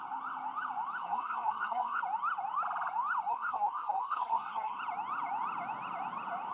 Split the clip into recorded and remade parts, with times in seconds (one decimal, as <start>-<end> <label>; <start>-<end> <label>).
0.0-1.0 recorded; 1.0-2.0 remade; 2.0-3.3 recorded; 3.3-4.8 remade; 4.8-6.5 recorded